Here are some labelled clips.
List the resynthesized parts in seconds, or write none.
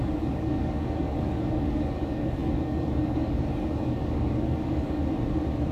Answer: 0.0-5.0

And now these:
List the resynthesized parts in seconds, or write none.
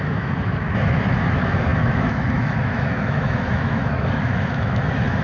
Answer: 0.0-5.2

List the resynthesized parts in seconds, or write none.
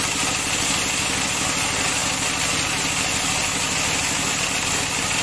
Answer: none